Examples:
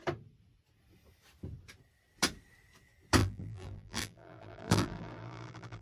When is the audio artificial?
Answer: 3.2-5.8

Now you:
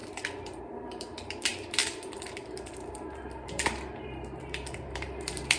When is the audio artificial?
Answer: 0.6-5.6

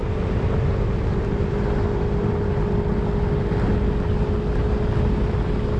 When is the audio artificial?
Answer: none

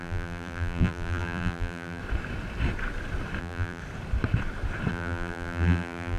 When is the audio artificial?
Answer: 0.0-2.0; 3.4-3.8; 4.9-6.2

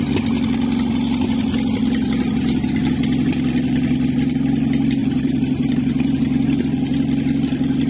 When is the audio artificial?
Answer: 5.0-6.6